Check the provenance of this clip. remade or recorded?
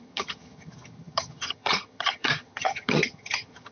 remade